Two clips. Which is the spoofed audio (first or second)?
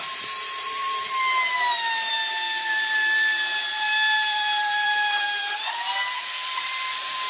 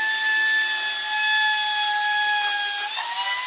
first